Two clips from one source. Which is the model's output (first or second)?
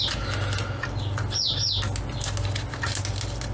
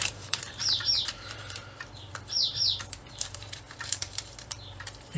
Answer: second